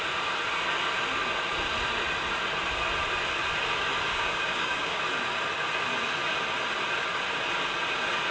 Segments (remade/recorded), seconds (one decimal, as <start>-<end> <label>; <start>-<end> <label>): 0.0-4.1 recorded; 4.1-5.0 remade; 5.0-8.3 recorded